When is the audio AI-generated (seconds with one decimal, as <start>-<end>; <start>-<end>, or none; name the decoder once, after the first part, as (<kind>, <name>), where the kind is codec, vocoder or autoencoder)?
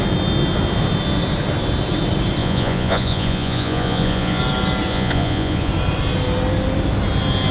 2.4-4.4 (vocoder, Vocos); 4.9-5.7